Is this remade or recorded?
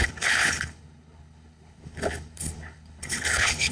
remade